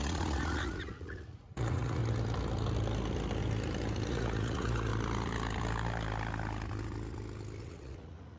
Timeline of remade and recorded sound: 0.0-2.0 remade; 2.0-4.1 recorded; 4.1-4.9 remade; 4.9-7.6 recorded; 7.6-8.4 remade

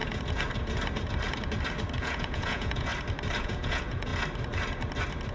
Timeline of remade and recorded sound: 0.0-2.0 recorded; 2.0-2.9 remade; 2.9-3.4 recorded; 3.4-4.1 remade; 4.1-5.3 recorded

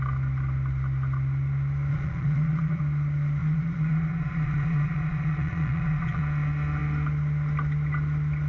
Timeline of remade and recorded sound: 0.0-1.9 recorded; 1.9-2.8 remade; 2.8-3.4 recorded; 3.4-6.2 remade; 6.2-8.5 recorded